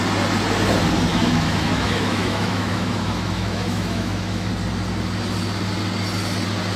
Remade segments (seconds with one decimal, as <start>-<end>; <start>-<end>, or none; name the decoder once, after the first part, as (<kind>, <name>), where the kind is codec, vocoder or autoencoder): 1.1-4.5 (autoencoder, DAC-VAE)